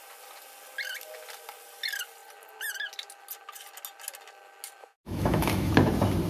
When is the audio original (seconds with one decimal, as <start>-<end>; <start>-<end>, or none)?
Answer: 0.0-4.8; 5.7-6.3